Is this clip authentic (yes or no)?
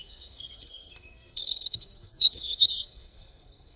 no